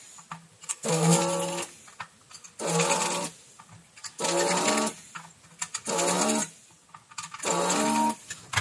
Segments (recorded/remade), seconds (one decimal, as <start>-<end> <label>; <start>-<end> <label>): 0.0-0.7 recorded; 0.7-1.2 remade; 1.2-8.6 recorded